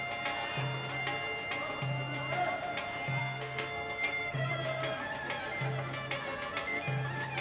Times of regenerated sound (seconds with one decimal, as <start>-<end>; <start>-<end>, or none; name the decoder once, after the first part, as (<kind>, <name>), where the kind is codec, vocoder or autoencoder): 3.2-4.5 (codec, SNAC)